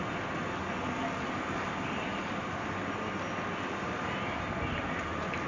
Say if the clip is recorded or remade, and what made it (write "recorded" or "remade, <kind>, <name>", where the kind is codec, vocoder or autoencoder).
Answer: recorded